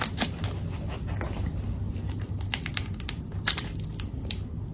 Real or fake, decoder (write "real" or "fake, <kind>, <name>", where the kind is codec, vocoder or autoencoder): real